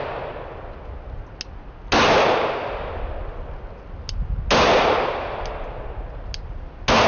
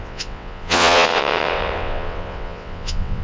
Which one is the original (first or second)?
first